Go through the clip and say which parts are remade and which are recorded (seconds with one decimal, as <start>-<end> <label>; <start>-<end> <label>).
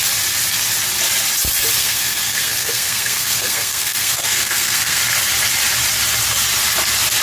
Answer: 0.0-1.8 recorded; 1.8-5.0 remade; 5.0-7.2 recorded